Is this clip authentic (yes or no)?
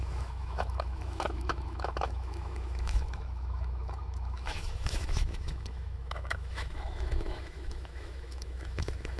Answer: no